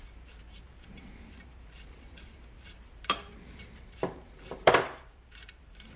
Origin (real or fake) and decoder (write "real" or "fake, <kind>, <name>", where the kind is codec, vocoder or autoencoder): fake, vocoder, BigVGAN v2